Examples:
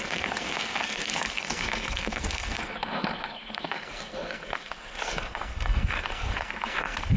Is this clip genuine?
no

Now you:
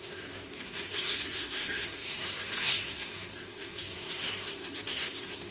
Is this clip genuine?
no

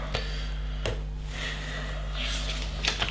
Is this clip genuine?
yes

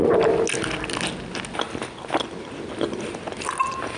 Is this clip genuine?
yes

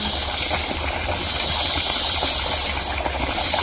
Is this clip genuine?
yes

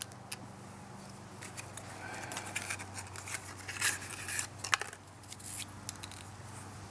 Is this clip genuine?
yes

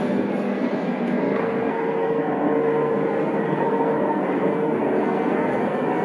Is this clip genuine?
no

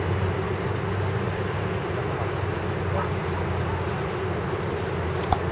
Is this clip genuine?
yes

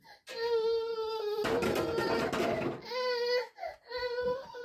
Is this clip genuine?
yes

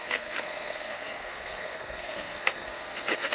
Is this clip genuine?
no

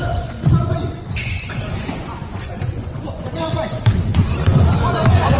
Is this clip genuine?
no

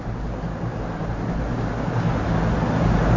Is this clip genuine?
yes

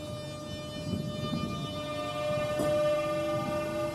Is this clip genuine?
yes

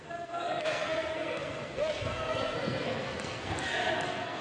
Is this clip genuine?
no